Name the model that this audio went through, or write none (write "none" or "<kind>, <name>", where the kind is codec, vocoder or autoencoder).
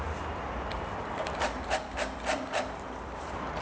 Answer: vocoder, BigVGAN v2